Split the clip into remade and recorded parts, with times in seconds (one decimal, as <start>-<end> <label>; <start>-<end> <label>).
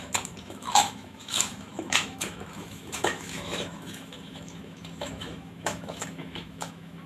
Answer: 0.0-7.1 remade